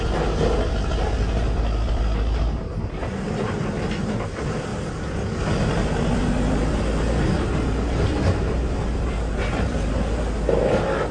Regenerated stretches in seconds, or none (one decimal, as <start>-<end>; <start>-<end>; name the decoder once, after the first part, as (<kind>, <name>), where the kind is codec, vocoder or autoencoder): none